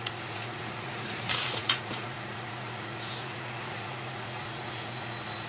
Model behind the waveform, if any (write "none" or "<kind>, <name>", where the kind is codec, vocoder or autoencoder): vocoder, Vocos